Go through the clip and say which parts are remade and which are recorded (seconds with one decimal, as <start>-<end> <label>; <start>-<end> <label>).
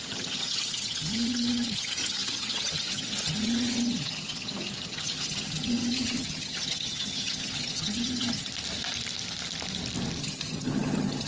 0.0-8.5 remade; 8.5-10.2 recorded; 10.2-11.3 remade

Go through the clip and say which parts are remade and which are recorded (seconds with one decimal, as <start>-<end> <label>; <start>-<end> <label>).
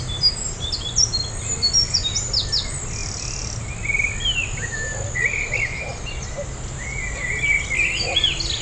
0.0-8.6 recorded